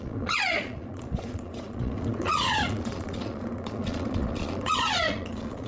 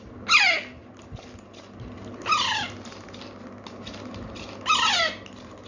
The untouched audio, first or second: second